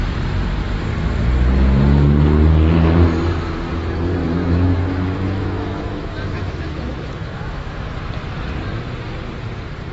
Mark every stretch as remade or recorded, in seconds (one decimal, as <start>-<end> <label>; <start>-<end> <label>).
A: 0.0-4.2 recorded; 4.2-7.9 remade; 7.9-9.9 recorded